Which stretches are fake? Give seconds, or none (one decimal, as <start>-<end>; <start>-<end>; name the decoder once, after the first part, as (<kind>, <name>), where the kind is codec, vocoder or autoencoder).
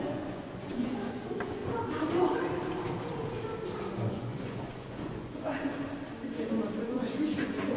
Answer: 0.0-1.6 (vocoder, Vocos); 4.1-5.7; 6.8-7.8